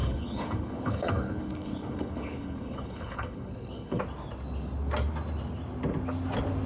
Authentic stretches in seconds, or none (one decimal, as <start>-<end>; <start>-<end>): 4.0-6.7